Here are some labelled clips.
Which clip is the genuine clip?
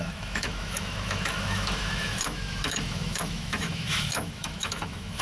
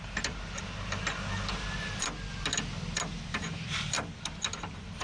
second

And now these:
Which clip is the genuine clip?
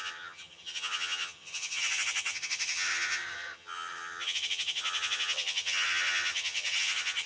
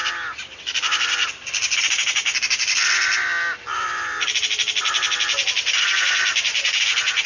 second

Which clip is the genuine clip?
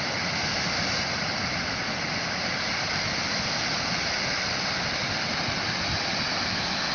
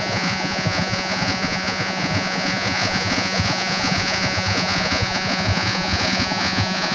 first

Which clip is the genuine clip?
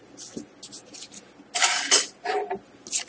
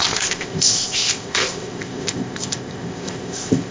first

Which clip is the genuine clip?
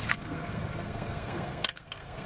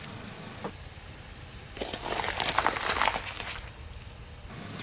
second